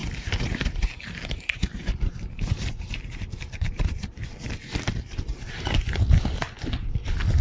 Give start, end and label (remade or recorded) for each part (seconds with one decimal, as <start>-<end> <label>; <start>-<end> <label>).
0.0-4.1 remade; 4.1-7.4 recorded

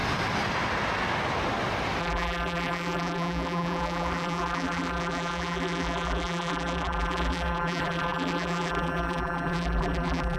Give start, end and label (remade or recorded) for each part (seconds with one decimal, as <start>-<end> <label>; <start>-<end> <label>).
0.0-2.0 recorded; 2.0-10.4 remade

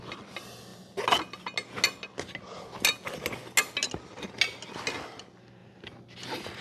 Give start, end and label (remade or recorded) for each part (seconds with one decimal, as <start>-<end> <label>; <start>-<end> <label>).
0.0-6.6 recorded

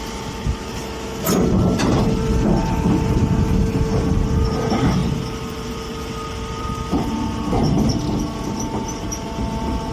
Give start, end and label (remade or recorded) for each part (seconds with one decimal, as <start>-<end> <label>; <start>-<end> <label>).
0.0-5.0 recorded; 5.0-7.1 remade; 7.1-9.9 recorded

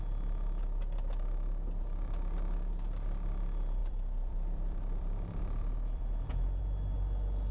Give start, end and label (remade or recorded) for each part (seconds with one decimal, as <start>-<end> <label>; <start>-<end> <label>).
0.0-3.8 recorded; 3.8-6.6 remade; 6.6-7.5 recorded